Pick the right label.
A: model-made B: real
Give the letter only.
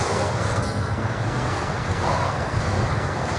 A